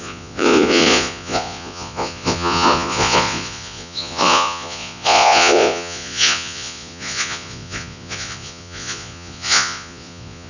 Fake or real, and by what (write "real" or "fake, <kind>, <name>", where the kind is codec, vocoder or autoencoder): fake, vocoder, Vocos